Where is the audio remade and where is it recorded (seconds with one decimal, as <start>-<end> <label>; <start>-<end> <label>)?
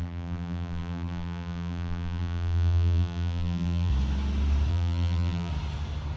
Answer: 0.0-3.9 remade; 3.9-4.7 recorded; 4.7-5.5 remade; 5.5-6.2 recorded